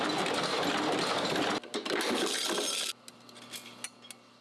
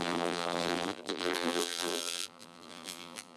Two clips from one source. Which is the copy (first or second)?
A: second